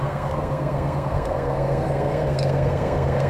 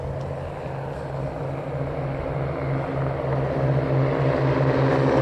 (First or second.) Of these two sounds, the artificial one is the first